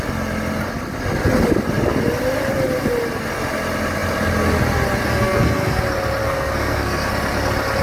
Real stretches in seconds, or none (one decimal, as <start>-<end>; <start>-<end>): 0.0-5.1; 5.8-6.2; 7.1-7.8